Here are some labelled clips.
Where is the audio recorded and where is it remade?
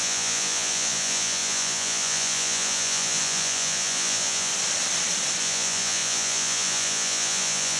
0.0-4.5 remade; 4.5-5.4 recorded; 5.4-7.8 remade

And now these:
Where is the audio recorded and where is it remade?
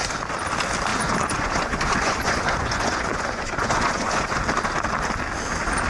0.0-0.9 recorded; 0.9-4.4 remade; 4.4-5.9 recorded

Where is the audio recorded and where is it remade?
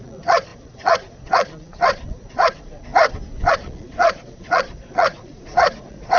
0.0-2.9 remade; 2.9-3.5 recorded; 3.5-6.2 remade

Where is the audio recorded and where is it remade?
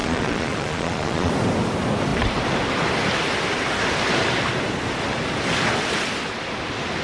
0.0-1.3 remade; 1.3-7.0 recorded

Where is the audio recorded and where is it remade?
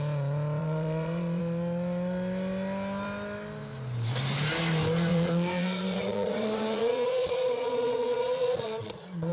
0.0-0.6 recorded; 0.6-1.4 remade; 1.4-5.1 recorded; 5.1-9.3 remade